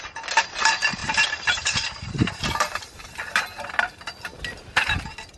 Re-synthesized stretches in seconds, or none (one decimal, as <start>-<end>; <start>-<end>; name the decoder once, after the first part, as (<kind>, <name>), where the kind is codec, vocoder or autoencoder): 1.0-2.8 (vocoder, BigVGAN v2)